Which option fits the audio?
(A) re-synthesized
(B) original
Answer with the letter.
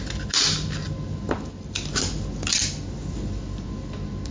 B